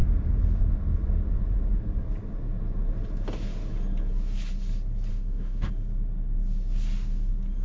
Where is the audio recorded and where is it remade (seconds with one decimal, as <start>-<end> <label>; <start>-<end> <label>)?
0.0-5.1 recorded; 5.1-5.7 remade; 5.7-7.6 recorded